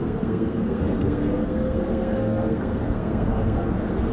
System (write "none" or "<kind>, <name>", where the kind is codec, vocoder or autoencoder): codec, SNAC